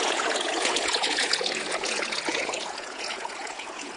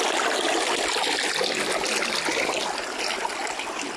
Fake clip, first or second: first